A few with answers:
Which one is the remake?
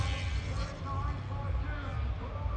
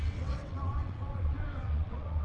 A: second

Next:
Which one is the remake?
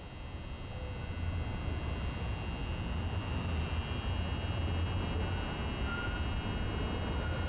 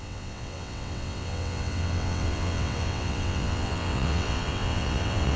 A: second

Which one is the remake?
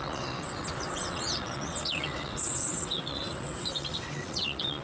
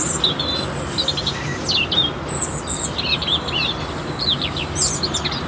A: first